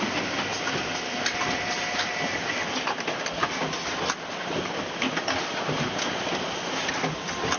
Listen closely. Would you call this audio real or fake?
real